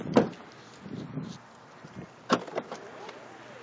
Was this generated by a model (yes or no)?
no